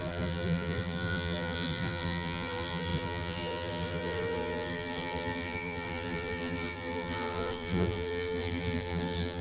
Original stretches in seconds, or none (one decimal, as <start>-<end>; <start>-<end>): none